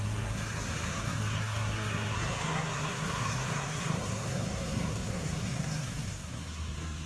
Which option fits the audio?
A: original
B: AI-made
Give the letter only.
B